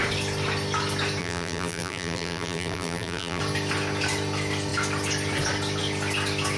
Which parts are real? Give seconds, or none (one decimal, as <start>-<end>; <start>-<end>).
0.0-1.2; 3.4-6.6